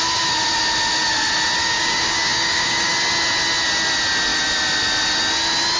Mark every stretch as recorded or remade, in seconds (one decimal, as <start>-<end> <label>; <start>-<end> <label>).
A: 0.0-1.6 recorded; 1.6-2.9 remade; 2.9-5.8 recorded